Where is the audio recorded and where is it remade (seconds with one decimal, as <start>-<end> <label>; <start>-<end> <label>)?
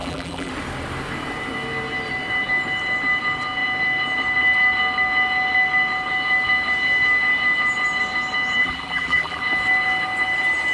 0.0-0.5 remade; 0.5-8.6 recorded; 8.6-9.4 remade; 9.4-10.7 recorded